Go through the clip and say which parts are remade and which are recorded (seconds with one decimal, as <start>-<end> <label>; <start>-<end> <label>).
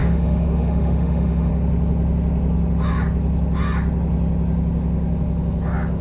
0.0-1.5 remade; 1.5-6.0 recorded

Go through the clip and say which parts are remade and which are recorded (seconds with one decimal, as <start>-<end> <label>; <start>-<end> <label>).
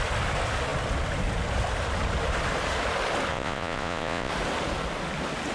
0.0-3.3 recorded; 3.3-4.3 remade; 4.3-5.5 recorded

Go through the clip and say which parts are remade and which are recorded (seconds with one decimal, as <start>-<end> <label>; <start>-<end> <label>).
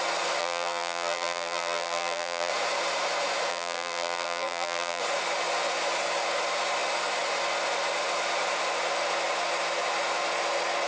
0.0-0.4 recorded; 0.4-2.5 remade; 2.5-3.5 recorded; 3.5-5.0 remade; 5.0-10.9 recorded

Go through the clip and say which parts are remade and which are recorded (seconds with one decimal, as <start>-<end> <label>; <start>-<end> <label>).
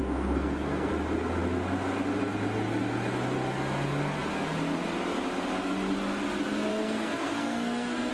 0.0-0.9 remade; 0.9-6.7 recorded; 6.7-8.1 remade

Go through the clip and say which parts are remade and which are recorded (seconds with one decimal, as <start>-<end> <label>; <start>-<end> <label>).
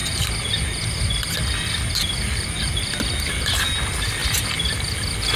0.0-5.4 recorded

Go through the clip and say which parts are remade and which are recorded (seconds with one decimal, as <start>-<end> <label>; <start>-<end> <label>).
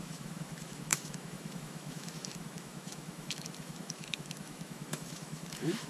0.0-5.9 remade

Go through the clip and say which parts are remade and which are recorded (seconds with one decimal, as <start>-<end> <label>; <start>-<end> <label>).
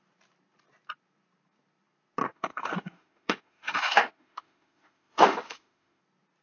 0.0-2.2 recorded; 2.2-6.0 remade; 6.0-6.4 recorded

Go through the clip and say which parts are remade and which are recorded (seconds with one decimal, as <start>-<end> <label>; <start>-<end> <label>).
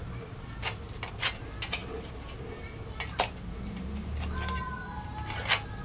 0.0-5.8 recorded